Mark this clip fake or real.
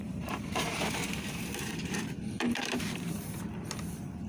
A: fake